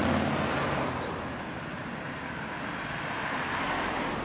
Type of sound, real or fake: real